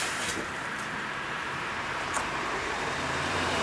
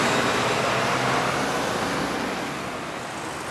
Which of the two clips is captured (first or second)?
second